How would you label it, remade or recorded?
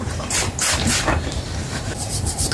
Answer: remade